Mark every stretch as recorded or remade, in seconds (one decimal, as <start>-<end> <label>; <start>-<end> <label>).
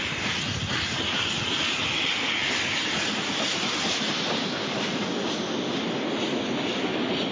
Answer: 0.0-7.3 recorded